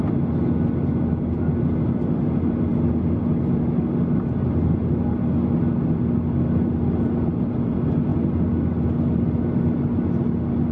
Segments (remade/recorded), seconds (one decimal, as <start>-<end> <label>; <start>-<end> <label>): 0.0-10.7 recorded